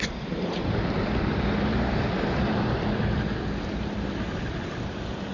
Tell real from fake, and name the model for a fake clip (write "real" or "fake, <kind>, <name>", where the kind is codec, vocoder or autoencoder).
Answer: fake, vocoder, BigVGAN v2